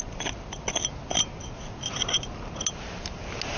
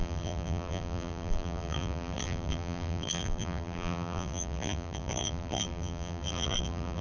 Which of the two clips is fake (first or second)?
second